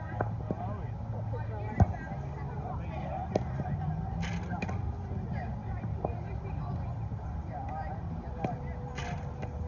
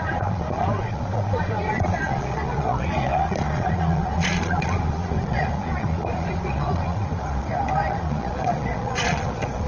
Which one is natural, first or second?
first